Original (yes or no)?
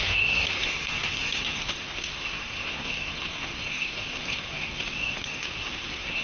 no